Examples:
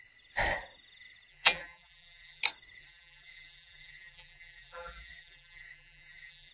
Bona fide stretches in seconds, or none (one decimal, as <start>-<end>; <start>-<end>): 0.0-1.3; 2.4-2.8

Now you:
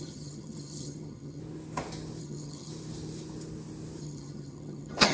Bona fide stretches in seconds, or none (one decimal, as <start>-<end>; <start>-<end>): 1.4-2.2; 2.7-4.0

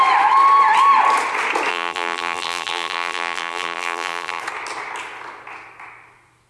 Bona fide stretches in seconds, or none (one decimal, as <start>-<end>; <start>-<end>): 0.0-1.7; 4.4-6.5